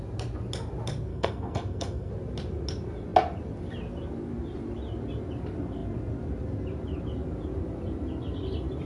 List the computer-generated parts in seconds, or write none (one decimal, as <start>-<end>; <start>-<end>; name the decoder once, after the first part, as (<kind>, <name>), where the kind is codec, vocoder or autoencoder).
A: 1.1-2.1 (codec, SNAC)